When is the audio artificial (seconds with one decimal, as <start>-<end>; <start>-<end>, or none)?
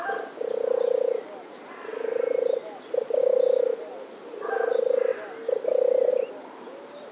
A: none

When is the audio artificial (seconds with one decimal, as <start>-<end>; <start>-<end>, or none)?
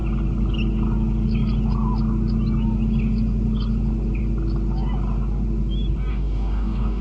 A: 6.1-7.0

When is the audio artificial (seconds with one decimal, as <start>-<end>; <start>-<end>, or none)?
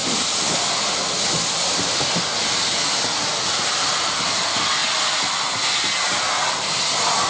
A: none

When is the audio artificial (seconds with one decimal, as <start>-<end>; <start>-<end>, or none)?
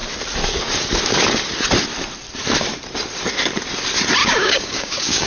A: 4.2-5.3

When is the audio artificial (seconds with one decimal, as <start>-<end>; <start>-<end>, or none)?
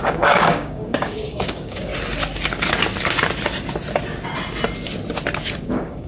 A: 0.0-1.9; 5.6-6.1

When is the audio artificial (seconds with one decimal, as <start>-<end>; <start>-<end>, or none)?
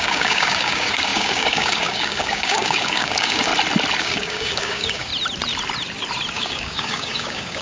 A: 0.0-3.5; 4.0-5.1; 6.3-7.6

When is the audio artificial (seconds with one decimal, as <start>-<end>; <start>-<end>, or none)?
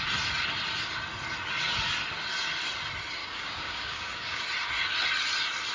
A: 3.2-4.4